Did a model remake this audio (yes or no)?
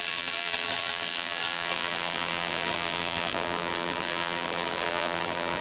yes